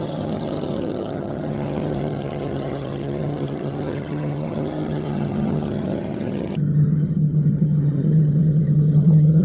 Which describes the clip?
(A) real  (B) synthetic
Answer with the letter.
B